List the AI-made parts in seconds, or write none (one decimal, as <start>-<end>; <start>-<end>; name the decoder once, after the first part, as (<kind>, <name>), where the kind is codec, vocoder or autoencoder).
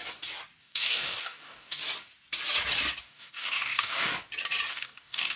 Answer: 0.6-1.8 (codec, DAC); 3.0-4.1; 4.7-5.4